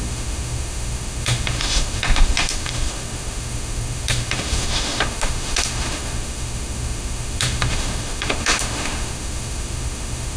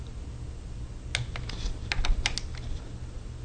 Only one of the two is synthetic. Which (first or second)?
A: first